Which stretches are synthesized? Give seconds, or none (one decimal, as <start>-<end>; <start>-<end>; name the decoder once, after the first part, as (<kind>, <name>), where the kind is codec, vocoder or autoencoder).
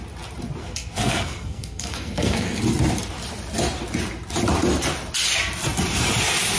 0.6-2.6 (codec, SNAC)